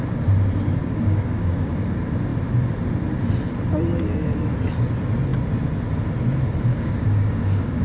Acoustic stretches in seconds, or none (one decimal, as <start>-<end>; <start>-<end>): 0.0-0.8; 1.7-6.7